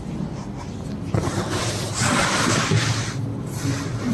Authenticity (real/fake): real